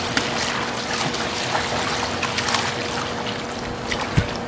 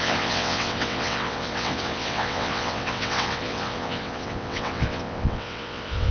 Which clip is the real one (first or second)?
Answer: first